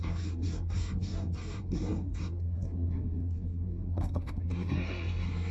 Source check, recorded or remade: remade